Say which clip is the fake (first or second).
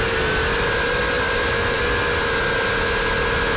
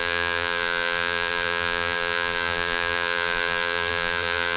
second